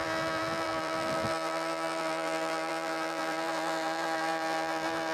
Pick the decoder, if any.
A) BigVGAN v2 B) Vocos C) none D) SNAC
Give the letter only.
A